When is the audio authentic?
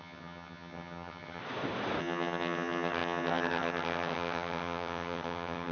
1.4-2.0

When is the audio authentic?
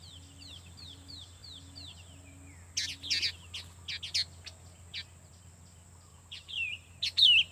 0.0-6.1; 7.0-7.5